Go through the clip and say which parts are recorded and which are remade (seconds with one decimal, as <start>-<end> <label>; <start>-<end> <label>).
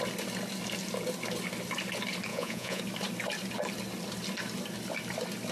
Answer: 0.0-2.3 recorded; 2.3-2.8 remade; 2.8-5.5 recorded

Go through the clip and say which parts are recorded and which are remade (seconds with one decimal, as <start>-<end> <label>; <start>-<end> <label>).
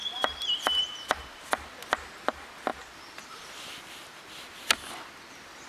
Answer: 0.0-5.7 recorded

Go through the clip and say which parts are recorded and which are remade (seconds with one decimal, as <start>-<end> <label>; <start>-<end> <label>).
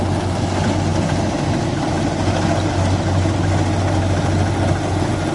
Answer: 0.0-5.3 recorded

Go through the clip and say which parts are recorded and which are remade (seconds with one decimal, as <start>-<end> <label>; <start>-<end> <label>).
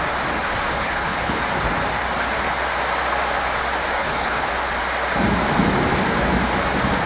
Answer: 0.0-0.7 recorded; 0.7-1.4 remade; 1.4-4.0 recorded; 4.0-4.5 remade; 4.5-7.1 recorded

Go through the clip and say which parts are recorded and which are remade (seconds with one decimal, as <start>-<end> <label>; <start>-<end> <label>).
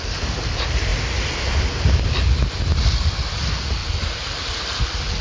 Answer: 0.0-5.2 recorded